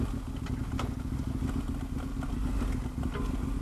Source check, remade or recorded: recorded